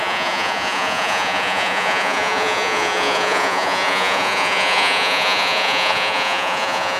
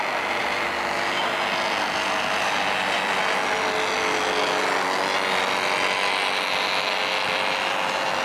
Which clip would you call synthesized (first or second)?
first